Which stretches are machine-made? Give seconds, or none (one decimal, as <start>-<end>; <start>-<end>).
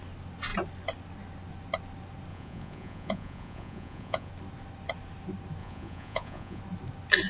2.3-4.3; 5.6-6.6